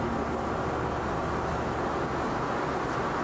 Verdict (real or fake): real